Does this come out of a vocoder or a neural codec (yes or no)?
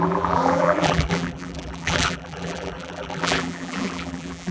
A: yes